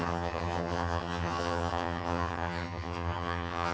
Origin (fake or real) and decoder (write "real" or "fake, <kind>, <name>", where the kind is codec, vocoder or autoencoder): fake, vocoder, HiFi-GAN